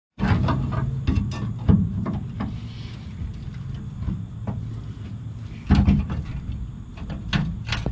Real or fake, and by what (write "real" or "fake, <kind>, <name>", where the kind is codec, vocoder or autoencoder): real